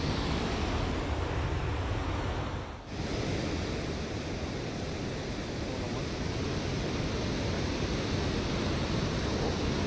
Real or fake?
real